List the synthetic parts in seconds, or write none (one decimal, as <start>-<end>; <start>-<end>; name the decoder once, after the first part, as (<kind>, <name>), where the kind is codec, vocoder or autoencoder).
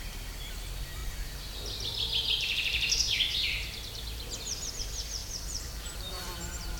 5.2-6.8 (vocoder, BigVGAN v2)